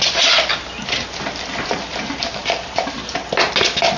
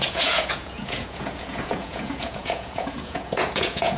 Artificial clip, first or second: second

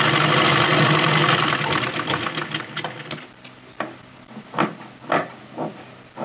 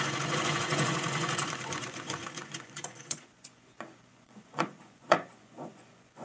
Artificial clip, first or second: second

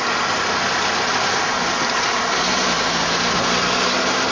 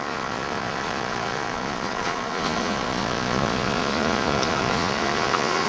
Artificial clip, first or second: second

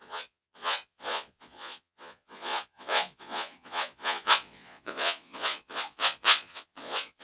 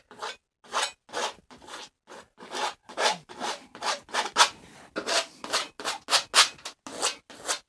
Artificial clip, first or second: first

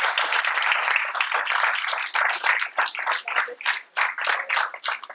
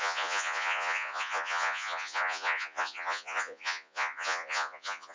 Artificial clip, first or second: second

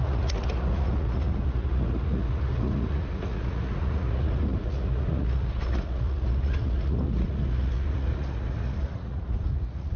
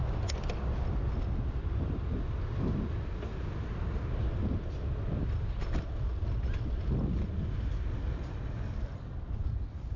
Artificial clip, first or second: first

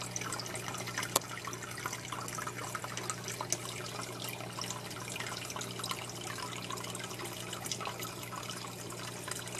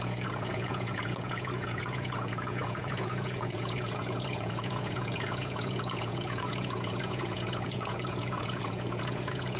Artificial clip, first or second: second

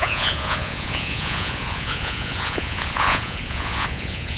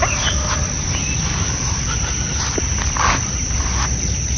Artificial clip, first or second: first